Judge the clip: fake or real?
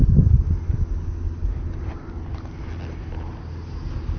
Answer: real